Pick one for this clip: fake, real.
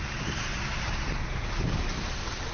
fake